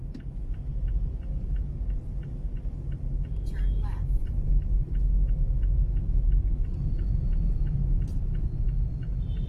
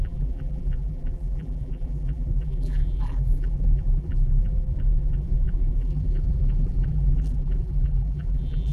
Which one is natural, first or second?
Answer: first